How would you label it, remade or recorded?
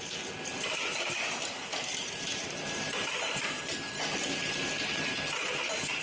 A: recorded